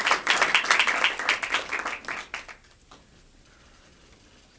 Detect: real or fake real